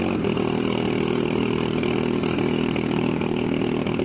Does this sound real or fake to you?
real